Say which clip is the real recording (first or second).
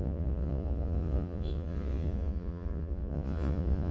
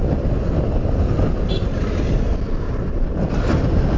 second